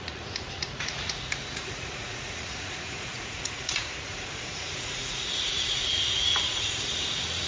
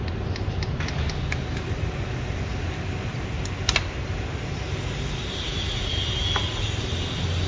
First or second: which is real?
second